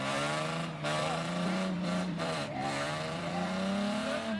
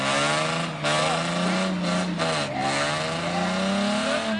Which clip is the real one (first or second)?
second